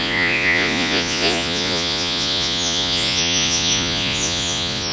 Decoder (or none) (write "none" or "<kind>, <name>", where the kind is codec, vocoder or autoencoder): vocoder, Vocos